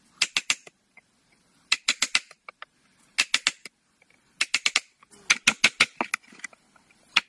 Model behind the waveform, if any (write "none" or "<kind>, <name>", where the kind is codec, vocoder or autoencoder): none